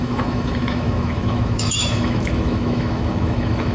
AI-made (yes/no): yes